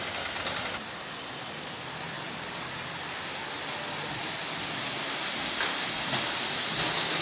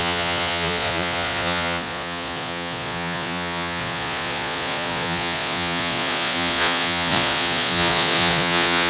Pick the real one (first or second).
first